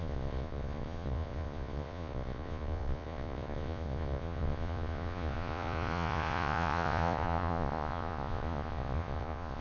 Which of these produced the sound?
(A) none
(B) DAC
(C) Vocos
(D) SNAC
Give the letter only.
C